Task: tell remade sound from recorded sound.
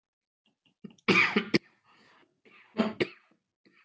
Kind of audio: recorded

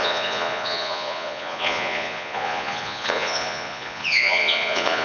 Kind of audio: remade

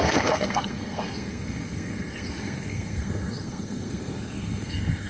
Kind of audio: remade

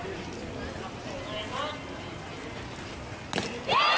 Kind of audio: recorded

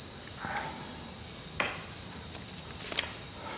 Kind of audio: recorded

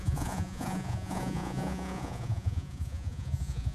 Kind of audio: remade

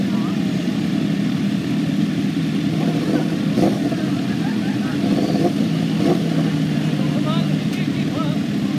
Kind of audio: recorded